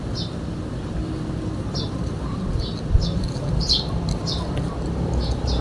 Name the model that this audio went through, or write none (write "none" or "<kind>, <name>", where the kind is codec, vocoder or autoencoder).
none